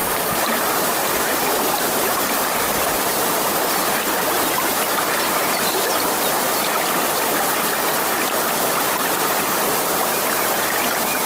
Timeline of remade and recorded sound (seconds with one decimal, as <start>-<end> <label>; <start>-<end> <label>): 0.0-11.3 recorded